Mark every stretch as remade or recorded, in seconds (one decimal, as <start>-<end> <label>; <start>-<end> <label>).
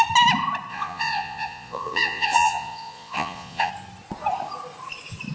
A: 0.0-0.7 recorded; 0.7-3.7 remade; 3.7-5.3 recorded